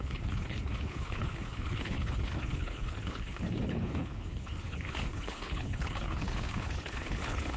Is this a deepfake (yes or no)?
yes